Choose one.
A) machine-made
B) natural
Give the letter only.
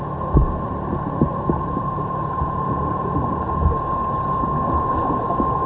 B